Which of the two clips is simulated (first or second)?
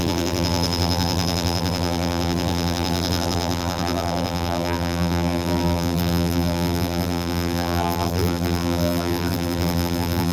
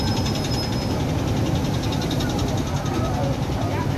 first